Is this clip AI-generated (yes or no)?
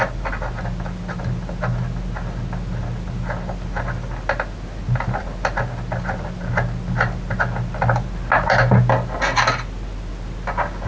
no